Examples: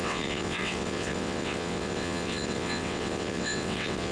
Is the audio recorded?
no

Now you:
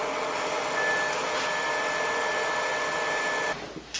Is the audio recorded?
yes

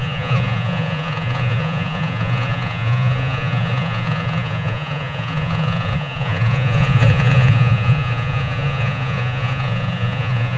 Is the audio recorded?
no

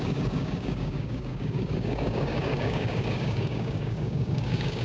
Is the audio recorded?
no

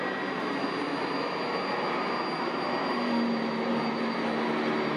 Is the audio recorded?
yes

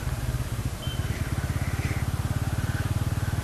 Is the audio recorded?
yes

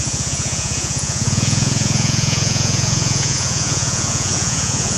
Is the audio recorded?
no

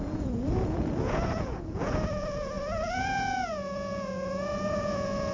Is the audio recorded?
no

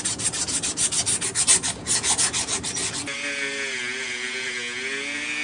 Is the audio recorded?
yes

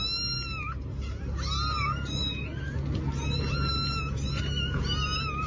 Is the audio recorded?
yes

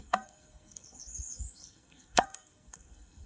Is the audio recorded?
no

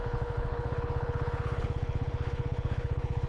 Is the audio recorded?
no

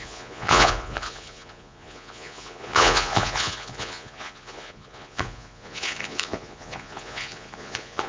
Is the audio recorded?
no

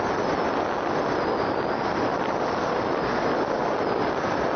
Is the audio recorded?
yes